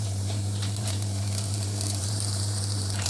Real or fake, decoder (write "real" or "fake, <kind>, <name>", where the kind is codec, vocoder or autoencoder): fake, vocoder, BigVGAN v2